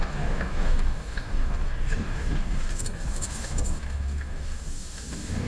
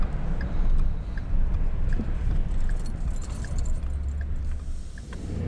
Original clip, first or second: second